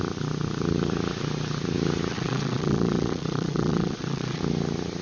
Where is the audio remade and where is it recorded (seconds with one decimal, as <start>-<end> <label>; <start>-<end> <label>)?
0.0-2.1 recorded; 2.1-4.4 remade; 4.4-5.0 recorded